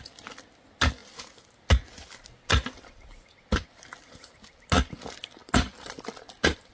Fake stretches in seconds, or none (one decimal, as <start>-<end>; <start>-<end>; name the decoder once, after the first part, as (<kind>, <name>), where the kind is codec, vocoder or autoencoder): none